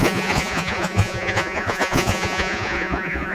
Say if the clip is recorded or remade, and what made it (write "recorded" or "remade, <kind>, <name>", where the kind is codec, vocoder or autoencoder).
remade, vocoder, Vocos